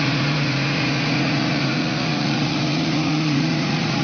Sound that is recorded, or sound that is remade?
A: remade